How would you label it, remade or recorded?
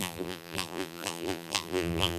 remade